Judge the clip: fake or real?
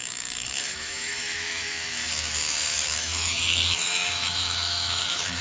fake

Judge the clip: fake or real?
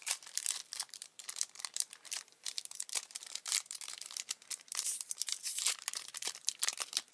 fake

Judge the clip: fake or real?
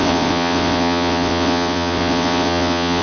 fake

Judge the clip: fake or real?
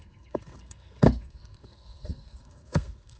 fake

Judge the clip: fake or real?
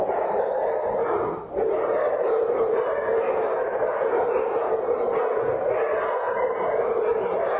real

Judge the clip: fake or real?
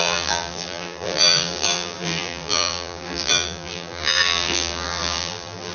fake